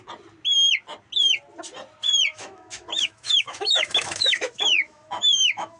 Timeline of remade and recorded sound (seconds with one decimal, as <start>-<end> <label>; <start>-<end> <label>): 0.0-2.3 recorded; 2.3-5.8 remade